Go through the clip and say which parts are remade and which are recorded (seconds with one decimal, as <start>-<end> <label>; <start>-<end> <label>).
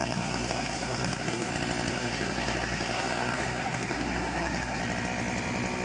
0.0-1.5 remade; 1.5-1.9 recorded; 1.9-4.8 remade; 4.8-5.8 recorded